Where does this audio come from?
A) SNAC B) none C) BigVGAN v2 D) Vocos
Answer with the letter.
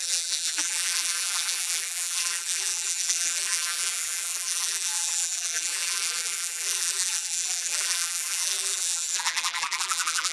C